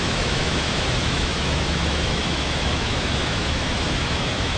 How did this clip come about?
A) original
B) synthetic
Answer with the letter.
B